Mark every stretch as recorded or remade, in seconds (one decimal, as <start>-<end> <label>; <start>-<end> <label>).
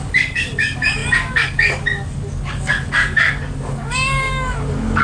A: 0.0-5.0 remade